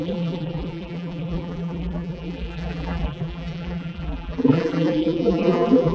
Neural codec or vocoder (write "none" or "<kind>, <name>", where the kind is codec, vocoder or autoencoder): vocoder, BigVGAN v2